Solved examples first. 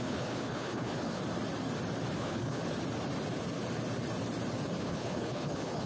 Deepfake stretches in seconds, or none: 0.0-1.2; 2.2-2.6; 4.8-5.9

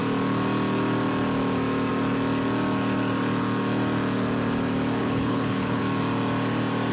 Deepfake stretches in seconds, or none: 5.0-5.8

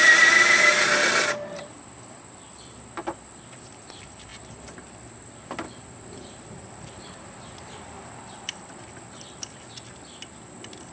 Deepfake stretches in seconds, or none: 0.0-10.9

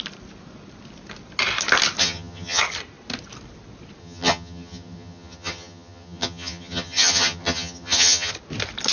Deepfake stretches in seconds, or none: 2.0-2.6; 4.0-8.3

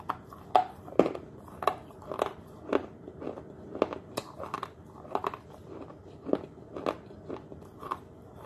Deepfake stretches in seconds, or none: none